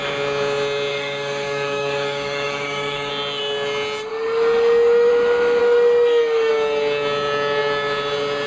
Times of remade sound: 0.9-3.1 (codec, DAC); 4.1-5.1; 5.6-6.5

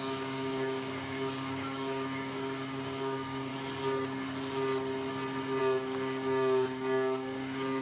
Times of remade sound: 0.0-3.5 (codec, DAC); 5.6-7.8

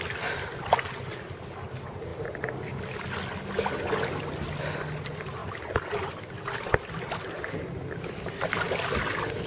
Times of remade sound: 2.1-2.8 (vocoder, BigVGAN v2); 5.4-7.0

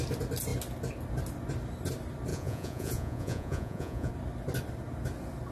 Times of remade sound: 2.3-4.1 (vocoder, Vocos)

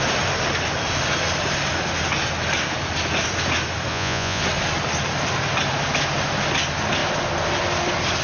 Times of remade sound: 3.9-4.4 (vocoder, Vocos)